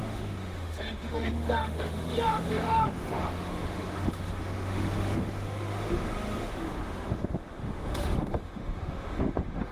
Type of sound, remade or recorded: remade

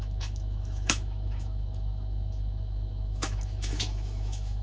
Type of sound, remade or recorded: remade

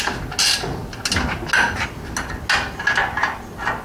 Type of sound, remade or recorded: recorded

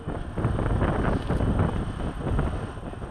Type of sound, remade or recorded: recorded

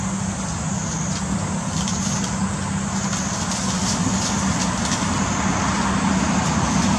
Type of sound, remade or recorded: recorded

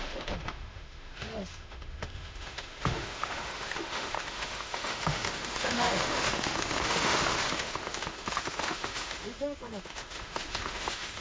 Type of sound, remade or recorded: remade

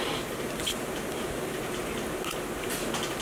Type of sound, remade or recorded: recorded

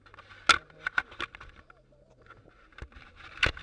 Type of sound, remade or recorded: recorded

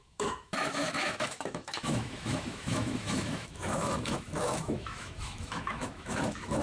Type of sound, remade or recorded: remade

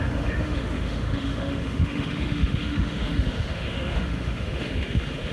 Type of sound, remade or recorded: remade